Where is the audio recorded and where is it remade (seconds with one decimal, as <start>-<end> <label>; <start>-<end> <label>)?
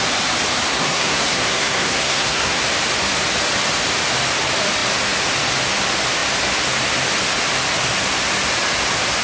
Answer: 0.0-0.7 recorded; 0.7-2.6 remade; 2.6-9.2 recorded